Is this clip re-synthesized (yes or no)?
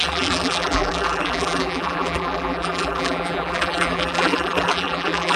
yes